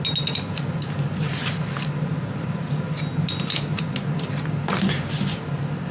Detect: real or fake real